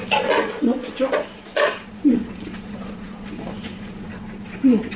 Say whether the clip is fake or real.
fake